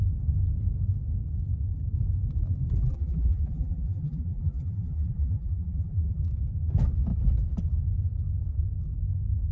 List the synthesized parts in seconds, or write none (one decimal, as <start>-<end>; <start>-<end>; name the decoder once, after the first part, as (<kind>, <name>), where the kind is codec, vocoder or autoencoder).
2.8-6.2 (vocoder, BigVGAN v2)